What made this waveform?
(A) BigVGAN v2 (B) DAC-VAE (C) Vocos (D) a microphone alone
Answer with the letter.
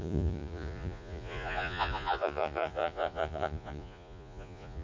C